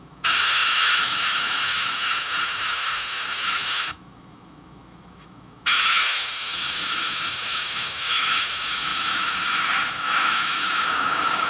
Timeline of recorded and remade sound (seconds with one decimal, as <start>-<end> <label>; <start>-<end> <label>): 0.0-11.5 remade

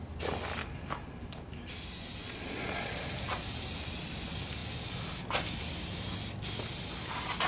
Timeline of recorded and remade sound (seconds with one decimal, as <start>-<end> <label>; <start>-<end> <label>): 0.0-2.2 recorded; 2.2-3.0 remade; 3.0-7.5 recorded

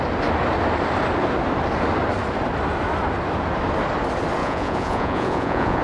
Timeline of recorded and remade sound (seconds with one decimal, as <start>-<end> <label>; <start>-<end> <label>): 0.0-4.4 recorded; 4.4-5.8 remade

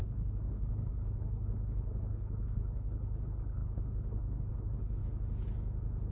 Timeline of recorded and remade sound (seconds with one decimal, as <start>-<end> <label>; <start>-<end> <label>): 0.0-5.0 remade; 5.0-6.1 recorded

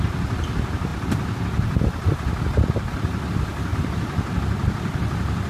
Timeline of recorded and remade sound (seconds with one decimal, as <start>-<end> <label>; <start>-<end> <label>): 0.0-3.7 recorded; 3.7-4.4 remade; 4.4-5.5 recorded

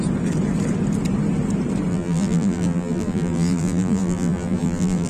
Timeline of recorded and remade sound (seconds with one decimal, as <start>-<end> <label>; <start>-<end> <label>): 0.0-1.9 recorded; 1.9-5.1 remade

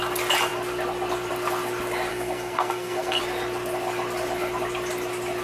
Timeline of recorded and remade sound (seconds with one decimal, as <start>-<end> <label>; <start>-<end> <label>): 0.0-2.1 recorded; 2.1-3.2 remade; 3.2-5.4 recorded

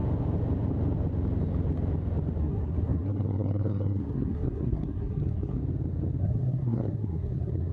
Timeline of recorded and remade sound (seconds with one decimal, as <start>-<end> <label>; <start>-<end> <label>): 0.0-2.4 recorded; 2.4-5.6 remade; 5.6-6.2 recorded; 6.2-7.7 remade